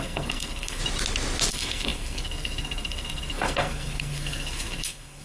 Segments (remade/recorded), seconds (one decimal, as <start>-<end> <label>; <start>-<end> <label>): 0.0-0.8 remade; 0.8-1.5 recorded; 1.5-5.2 remade